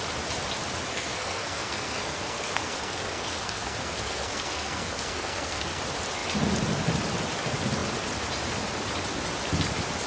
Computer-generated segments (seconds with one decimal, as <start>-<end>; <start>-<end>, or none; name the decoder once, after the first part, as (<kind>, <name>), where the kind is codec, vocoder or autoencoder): 0.9-5.8 (codec, SNAC)